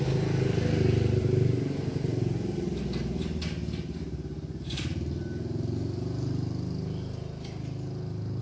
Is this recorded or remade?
recorded